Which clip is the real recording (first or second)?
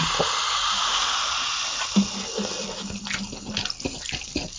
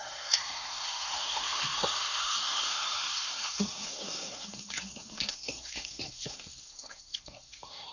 first